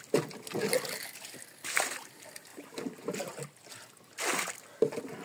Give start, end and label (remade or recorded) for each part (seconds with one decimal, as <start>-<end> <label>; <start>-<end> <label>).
0.0-5.2 recorded